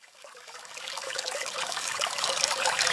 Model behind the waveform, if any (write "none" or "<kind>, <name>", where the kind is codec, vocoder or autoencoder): codec, DAC